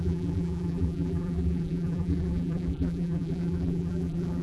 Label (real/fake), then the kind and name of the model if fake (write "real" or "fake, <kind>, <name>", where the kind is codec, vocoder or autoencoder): fake, vocoder, BigVGAN v2